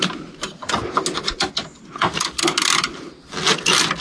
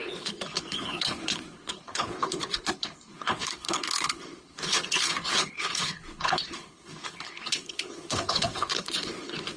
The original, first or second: first